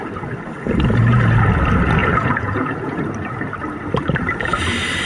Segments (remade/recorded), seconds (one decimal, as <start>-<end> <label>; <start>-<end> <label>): 0.0-2.0 recorded; 2.0-3.0 remade; 3.0-5.1 recorded